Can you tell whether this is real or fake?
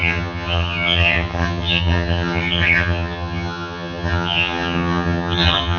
fake